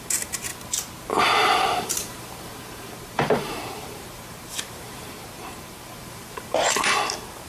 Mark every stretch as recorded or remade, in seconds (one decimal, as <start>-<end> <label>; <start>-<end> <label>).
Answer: 0.0-0.5 remade; 0.5-1.8 recorded; 1.8-7.5 remade